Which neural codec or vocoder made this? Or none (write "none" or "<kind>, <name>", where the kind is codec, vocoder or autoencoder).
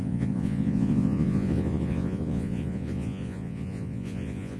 vocoder, Vocos